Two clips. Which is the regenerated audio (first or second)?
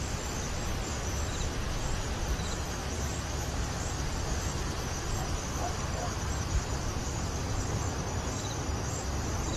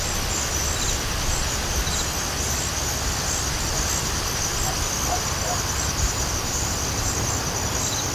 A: first